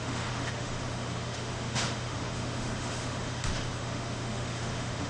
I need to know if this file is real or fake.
fake